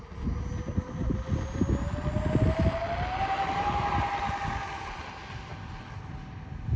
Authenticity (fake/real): real